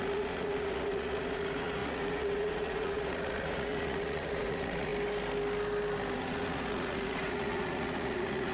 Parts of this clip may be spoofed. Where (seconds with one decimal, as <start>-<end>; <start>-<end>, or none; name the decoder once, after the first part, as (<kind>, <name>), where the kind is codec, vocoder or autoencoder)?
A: 0.0-4.9 (vocoder, Vocos); 6.2-8.5